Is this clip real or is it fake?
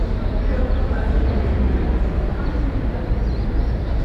fake